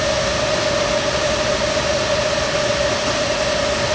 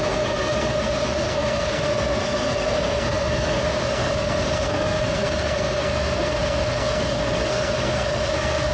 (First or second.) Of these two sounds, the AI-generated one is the second